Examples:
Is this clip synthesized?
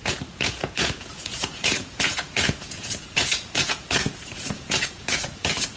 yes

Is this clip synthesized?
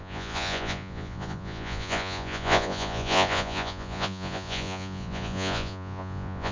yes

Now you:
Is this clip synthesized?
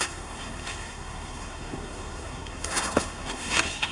yes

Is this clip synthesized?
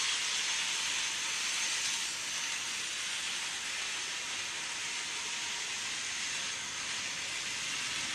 no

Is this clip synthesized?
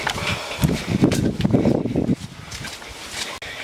no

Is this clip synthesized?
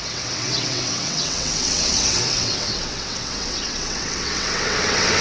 yes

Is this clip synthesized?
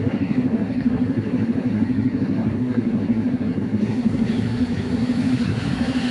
yes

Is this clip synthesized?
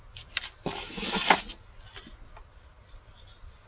no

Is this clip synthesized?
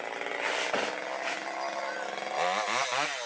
no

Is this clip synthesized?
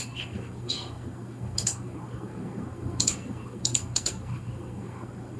yes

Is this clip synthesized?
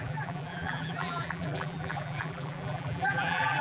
yes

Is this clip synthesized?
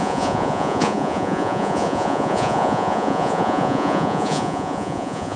yes